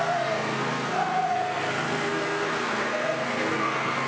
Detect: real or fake fake